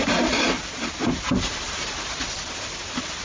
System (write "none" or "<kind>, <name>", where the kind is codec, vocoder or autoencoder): none